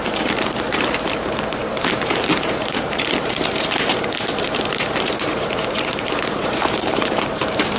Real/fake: fake